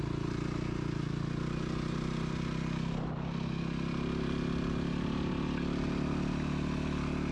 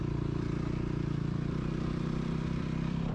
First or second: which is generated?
second